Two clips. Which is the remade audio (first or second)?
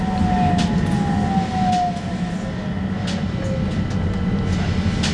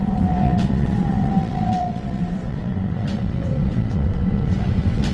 second